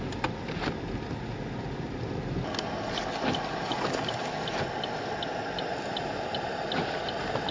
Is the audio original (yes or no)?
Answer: yes